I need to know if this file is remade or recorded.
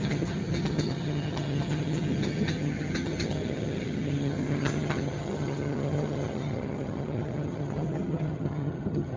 remade